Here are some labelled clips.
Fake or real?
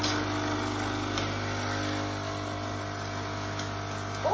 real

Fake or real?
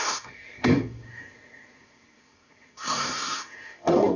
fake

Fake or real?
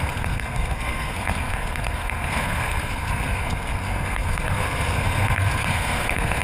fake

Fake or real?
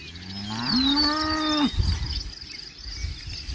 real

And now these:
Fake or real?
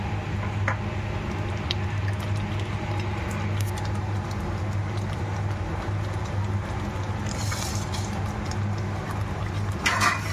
real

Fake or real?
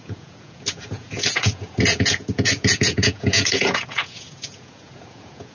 fake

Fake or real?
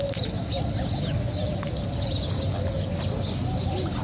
real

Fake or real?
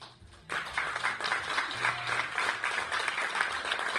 real